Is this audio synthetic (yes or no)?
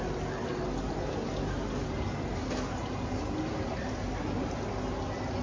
no